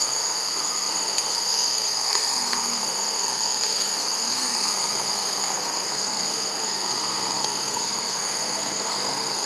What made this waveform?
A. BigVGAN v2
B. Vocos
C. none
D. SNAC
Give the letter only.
D